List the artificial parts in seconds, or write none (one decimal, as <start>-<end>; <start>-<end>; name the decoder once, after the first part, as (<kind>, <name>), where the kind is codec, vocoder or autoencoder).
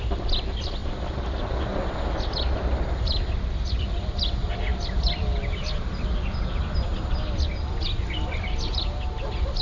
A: none